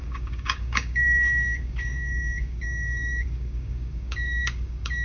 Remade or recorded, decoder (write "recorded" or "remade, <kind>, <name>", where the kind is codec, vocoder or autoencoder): remade, codec, DAC